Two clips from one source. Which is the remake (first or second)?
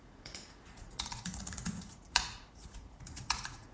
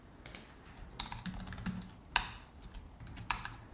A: first